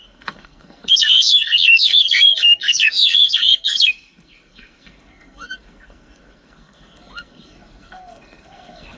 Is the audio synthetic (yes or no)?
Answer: yes